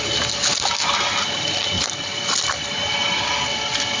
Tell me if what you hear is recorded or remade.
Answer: remade